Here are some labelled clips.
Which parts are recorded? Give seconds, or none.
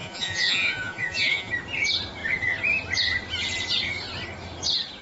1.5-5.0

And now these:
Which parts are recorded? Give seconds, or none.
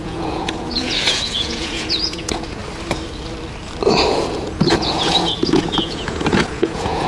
2.6-4.1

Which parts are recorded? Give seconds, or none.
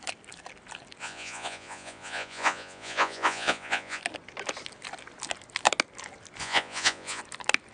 0.0-1.0; 4.0-6.4; 7.2-7.7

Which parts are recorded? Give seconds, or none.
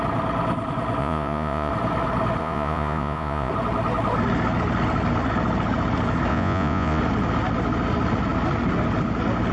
0.0-1.0; 1.7-2.4; 3.5-6.3; 7.0-9.5